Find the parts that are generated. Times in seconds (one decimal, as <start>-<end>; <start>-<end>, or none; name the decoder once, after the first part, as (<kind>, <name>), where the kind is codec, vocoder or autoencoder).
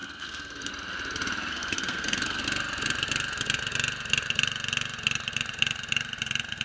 0.0-0.7 (codec, SNAC); 1.5-2.4